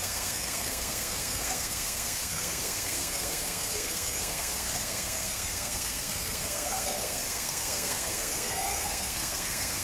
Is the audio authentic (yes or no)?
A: no